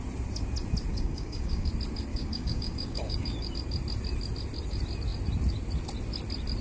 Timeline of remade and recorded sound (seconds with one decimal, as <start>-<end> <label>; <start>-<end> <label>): 0.0-0.9 recorded; 0.9-1.7 remade; 1.7-2.1 recorded; 2.1-3.5 remade; 3.5-6.6 recorded